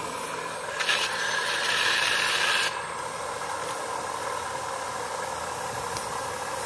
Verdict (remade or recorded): recorded